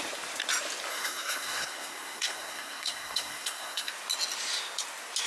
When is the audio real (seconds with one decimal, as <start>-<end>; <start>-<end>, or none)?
0.0-0.9; 3.9-5.3